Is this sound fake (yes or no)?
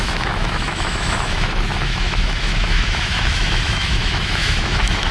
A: yes